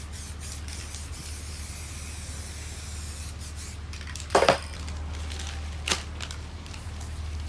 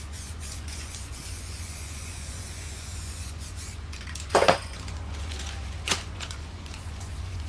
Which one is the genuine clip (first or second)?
first